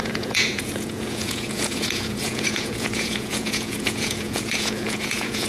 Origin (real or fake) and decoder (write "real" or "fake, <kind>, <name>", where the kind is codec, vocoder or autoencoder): fake, vocoder, Vocos